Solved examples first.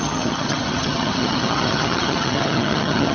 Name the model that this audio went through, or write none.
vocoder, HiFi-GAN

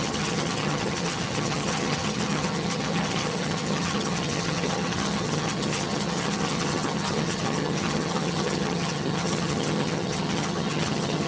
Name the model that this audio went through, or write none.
vocoder, HiFi-GAN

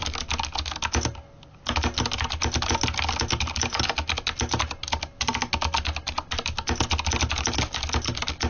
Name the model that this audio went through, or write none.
none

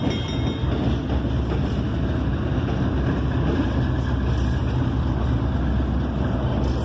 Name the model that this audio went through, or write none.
none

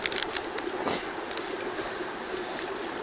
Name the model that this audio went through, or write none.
none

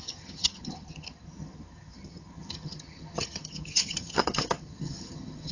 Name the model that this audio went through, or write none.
vocoder, HiFi-GAN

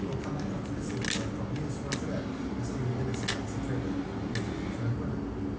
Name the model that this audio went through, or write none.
none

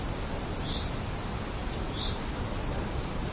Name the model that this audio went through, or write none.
none